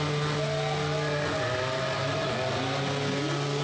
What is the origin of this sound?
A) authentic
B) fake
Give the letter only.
A